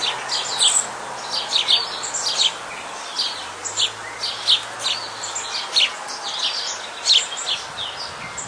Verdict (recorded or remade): recorded